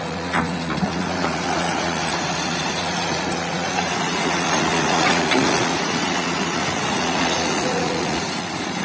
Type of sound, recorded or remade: remade